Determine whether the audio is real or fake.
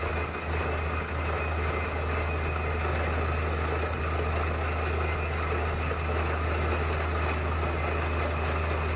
real